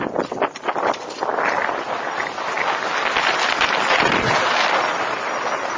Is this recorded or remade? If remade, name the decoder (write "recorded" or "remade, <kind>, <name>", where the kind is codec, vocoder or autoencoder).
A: recorded